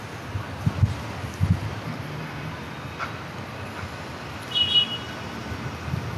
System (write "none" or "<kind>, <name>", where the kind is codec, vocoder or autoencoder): none